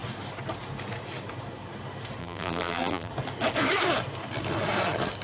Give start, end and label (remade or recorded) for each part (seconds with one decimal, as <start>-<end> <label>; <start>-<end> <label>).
0.0-2.2 recorded; 2.2-3.1 remade; 3.1-5.2 recorded